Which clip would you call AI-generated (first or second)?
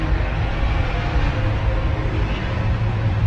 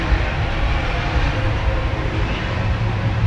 second